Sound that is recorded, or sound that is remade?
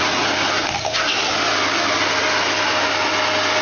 recorded